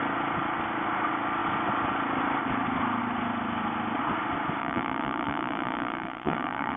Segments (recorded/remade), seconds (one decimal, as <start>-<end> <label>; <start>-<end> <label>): 0.0-4.6 recorded; 4.6-6.8 remade